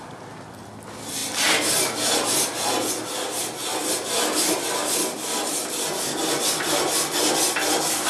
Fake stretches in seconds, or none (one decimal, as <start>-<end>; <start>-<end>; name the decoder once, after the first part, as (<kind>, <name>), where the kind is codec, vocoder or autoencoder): none